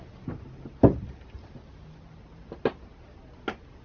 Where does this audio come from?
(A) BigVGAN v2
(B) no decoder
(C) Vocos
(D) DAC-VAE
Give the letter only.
B